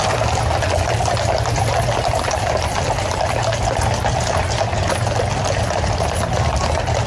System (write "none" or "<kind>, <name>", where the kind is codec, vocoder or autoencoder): none